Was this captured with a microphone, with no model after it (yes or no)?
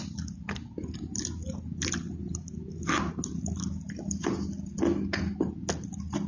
yes